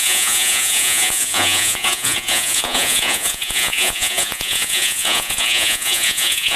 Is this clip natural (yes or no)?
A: no